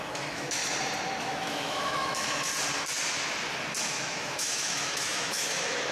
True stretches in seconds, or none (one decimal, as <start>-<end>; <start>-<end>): 0.6-1.2; 2.5-3.8